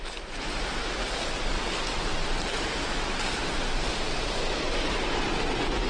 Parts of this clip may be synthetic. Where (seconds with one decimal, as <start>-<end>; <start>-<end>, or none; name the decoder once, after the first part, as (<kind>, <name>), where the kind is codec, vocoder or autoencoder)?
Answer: 0.0-3.9 (vocoder, BigVGAN v2); 5.5-5.9

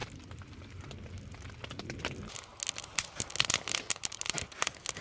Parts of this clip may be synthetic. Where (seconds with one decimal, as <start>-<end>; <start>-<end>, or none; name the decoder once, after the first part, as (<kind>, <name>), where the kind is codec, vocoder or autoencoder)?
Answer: none